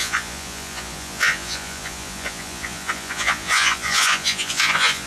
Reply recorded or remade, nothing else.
remade